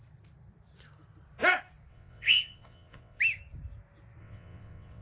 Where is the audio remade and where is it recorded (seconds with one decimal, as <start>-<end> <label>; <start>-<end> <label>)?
0.0-1.9 recorded; 1.9-3.2 remade; 3.2-4.2 recorded; 4.2-5.0 remade